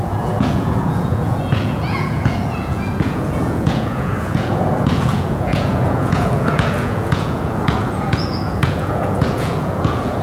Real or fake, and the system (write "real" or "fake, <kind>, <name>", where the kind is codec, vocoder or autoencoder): fake, vocoder, Vocos